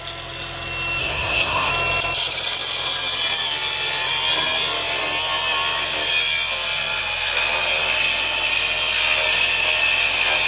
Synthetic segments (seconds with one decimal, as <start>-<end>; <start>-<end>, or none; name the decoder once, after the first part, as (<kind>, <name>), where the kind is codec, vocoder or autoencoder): 1.0-1.7 (codec, SNAC)